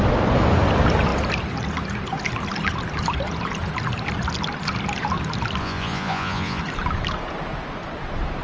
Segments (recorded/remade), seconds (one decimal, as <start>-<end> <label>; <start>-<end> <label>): 0.0-5.6 recorded; 5.6-6.6 remade; 6.6-8.4 recorded